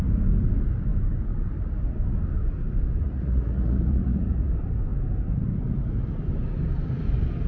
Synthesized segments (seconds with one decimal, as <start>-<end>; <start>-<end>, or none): 3.0-4.5